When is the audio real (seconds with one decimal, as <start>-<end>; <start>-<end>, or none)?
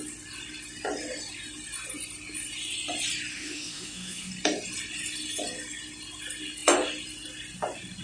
0.0-3.3; 4.3-8.0